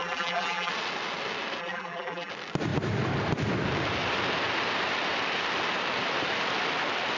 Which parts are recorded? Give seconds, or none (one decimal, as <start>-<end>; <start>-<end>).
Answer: 0.7-1.6; 2.3-7.2